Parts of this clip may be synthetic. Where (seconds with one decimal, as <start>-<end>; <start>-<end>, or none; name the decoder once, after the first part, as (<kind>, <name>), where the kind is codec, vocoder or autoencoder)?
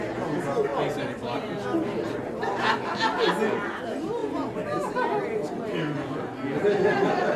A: none